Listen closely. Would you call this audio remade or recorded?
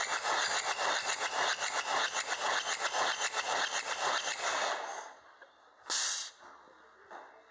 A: recorded